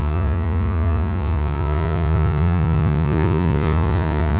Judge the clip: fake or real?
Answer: fake